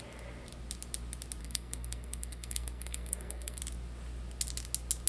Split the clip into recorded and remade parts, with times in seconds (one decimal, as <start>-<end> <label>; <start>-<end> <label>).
0.0-1.4 recorded; 1.4-3.6 remade; 3.6-5.1 recorded